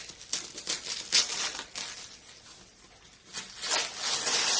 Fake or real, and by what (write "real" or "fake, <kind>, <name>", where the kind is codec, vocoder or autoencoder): real